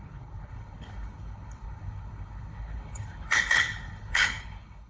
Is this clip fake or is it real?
fake